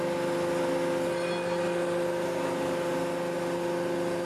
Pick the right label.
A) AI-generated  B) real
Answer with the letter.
B